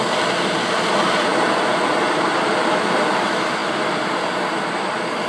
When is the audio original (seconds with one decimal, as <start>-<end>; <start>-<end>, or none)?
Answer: none